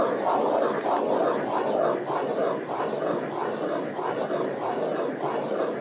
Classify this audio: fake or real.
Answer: real